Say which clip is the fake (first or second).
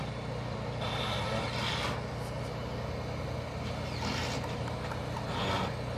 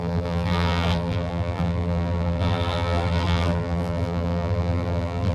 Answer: second